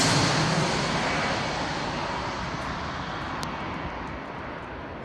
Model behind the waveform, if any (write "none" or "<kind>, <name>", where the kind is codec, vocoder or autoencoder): none